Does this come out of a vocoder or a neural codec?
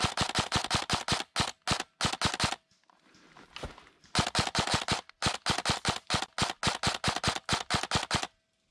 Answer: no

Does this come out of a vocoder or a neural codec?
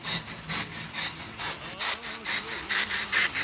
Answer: no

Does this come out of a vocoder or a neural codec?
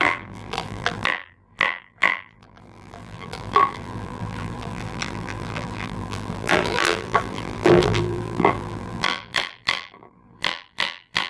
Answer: yes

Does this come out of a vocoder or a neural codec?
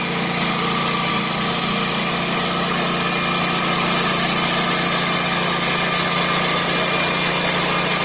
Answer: no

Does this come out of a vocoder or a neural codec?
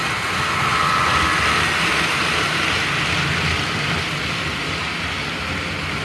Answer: no